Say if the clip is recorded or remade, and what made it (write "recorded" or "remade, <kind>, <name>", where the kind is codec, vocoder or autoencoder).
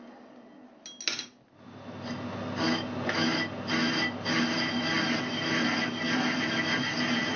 recorded